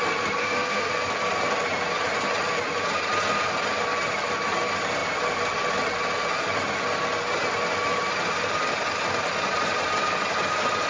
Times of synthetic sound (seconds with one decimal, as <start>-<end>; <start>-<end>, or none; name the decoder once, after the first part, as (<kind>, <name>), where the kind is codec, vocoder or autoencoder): 0.4-0.9 (codec, SNAC)